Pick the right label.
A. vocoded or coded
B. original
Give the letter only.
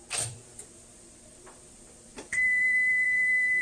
A